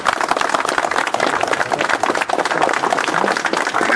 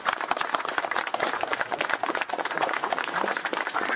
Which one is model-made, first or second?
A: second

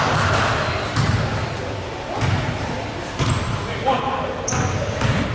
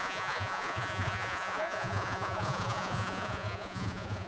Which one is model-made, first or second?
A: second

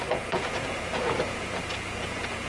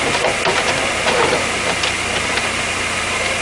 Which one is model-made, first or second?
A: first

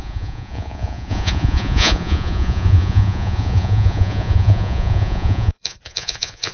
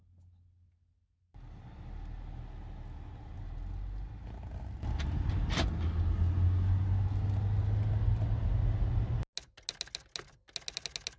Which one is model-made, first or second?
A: first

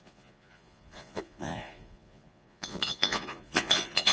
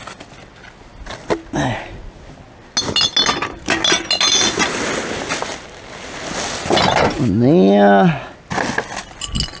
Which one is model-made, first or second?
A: first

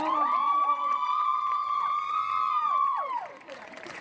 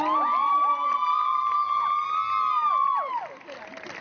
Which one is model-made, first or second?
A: first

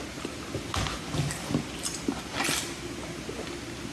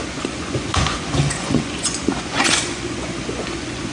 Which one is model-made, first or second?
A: second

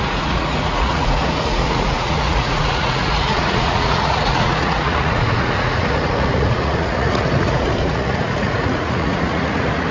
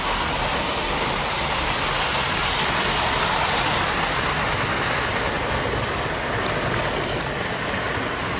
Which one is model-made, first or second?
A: first